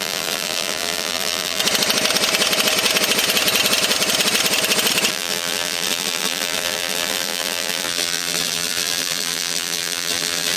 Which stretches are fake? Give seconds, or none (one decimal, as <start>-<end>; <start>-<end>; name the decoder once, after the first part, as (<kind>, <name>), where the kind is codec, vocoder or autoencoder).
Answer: 0.0-1.6 (vocoder, BigVGAN v2); 5.1-10.6